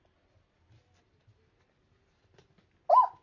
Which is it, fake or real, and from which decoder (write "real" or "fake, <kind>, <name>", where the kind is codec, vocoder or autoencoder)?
real